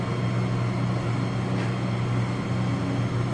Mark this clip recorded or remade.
recorded